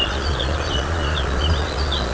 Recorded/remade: remade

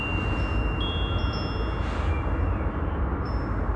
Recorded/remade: recorded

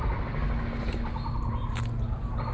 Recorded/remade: recorded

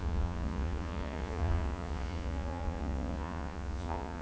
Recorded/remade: remade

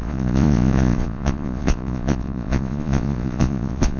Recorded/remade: remade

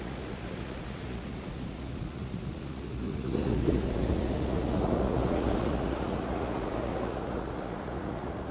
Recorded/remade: remade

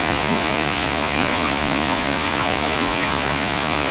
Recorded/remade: remade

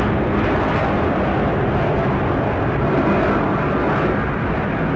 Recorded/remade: recorded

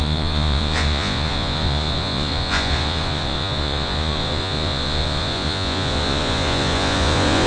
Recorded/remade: remade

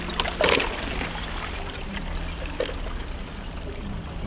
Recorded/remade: recorded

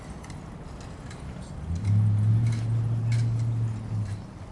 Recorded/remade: recorded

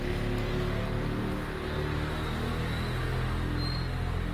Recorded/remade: recorded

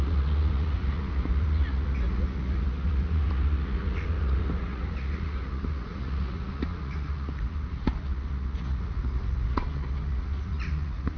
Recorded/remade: remade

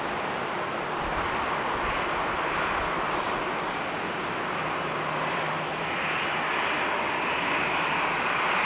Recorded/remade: recorded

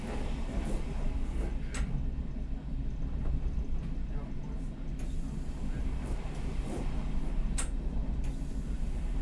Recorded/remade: recorded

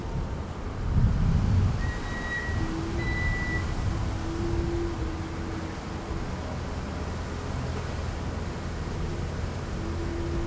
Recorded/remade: recorded